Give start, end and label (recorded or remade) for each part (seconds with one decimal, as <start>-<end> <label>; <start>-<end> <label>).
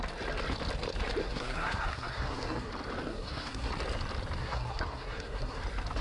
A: 0.0-1.2 recorded; 1.2-2.7 remade; 2.7-3.1 recorded; 3.1-3.7 remade; 3.7-4.4 recorded; 4.4-5.6 remade; 5.6-6.0 recorded